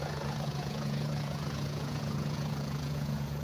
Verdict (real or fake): fake